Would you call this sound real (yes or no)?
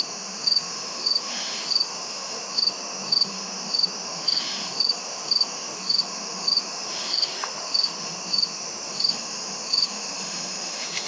no